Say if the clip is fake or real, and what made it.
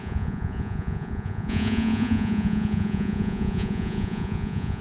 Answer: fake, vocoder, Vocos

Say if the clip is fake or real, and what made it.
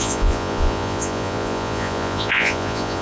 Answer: fake, vocoder, Vocos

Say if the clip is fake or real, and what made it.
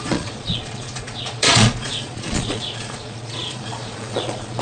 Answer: fake, vocoder, Vocos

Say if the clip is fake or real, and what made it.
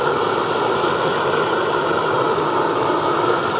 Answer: real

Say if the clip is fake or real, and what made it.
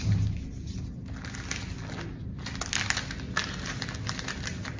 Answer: real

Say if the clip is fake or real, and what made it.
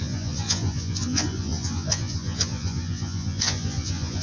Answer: fake, vocoder, Vocos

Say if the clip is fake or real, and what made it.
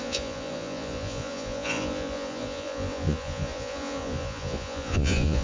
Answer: fake, vocoder, Vocos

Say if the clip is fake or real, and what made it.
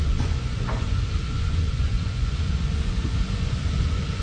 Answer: fake, vocoder, Vocos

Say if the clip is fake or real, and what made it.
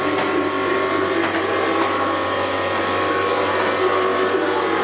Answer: real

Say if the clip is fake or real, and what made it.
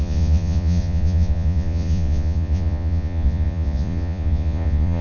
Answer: fake, vocoder, Vocos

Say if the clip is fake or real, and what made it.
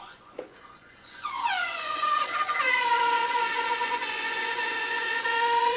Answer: fake, vocoder, Vocos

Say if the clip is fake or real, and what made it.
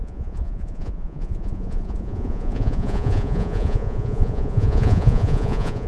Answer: fake, vocoder, Vocos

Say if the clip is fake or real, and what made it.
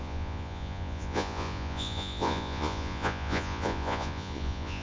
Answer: fake, vocoder, Vocos